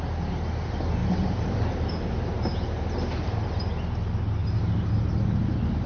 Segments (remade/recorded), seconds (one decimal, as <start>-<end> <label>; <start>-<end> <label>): 0.0-1.0 recorded; 1.0-3.7 remade; 3.7-5.9 recorded